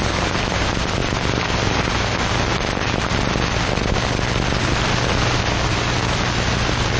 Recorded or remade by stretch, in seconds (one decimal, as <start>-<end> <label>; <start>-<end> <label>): 0.0-7.0 recorded